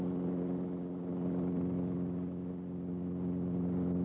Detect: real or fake real